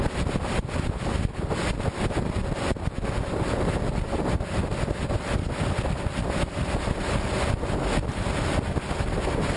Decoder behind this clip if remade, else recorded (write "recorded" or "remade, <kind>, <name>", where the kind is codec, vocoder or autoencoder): recorded